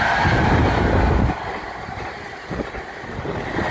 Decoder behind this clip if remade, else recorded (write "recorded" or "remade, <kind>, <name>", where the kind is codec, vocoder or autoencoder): recorded